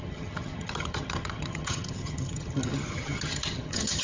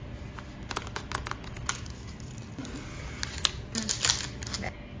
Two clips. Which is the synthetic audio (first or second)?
first